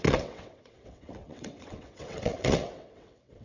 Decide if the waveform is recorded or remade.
remade